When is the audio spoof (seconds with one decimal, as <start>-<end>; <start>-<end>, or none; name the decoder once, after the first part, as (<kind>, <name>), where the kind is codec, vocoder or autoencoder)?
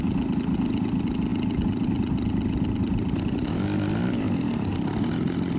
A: none